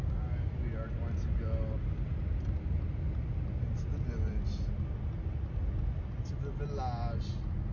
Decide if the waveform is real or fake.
real